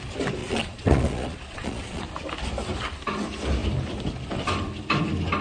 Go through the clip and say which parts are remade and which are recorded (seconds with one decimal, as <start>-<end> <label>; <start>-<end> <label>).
0.0-0.4 recorded; 0.4-2.0 remade; 2.0-5.4 recorded